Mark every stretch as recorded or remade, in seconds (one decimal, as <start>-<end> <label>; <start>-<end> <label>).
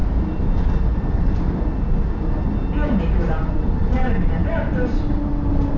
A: 0.0-5.8 recorded